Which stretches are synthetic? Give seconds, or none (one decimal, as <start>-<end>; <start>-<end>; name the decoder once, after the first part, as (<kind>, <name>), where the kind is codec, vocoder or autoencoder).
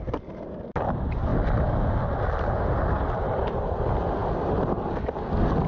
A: none